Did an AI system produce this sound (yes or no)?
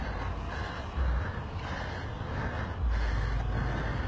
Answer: no